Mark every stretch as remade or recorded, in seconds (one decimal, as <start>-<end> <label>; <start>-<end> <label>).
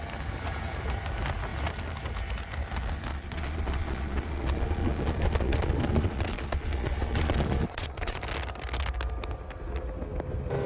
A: 0.0-3.1 recorded; 3.1-8.2 remade; 8.2-10.7 recorded